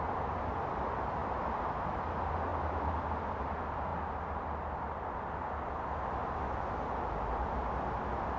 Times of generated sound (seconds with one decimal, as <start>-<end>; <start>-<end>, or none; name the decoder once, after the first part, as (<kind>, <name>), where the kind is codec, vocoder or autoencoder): none